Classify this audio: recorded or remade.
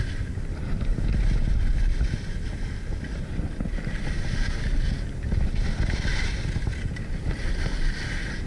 recorded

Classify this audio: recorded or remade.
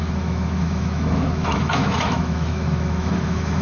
remade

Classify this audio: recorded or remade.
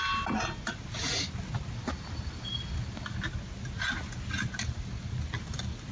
recorded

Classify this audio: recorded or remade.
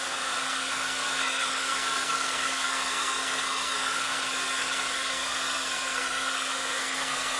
remade